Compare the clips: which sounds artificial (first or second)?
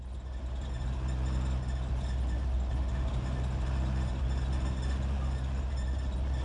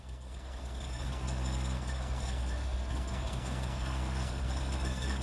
second